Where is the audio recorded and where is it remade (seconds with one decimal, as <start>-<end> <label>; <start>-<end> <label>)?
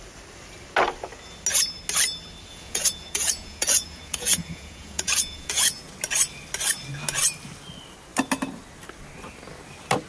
0.0-2.5 recorded; 2.5-5.9 remade; 5.9-10.1 recorded